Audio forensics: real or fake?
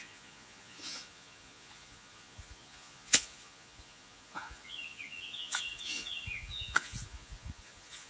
fake